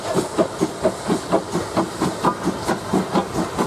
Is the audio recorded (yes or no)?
yes